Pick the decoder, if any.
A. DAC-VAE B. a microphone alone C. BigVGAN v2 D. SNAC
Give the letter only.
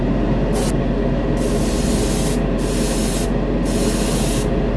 B